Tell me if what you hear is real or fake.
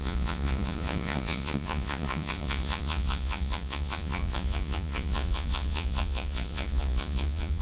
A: fake